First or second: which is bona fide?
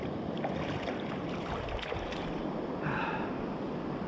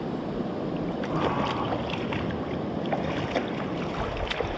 second